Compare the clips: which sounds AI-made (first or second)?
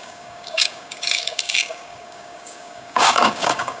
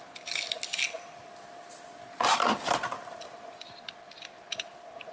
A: first